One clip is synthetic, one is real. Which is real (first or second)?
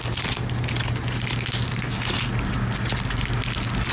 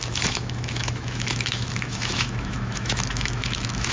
first